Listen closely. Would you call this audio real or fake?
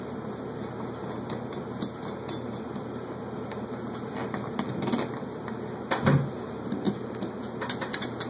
real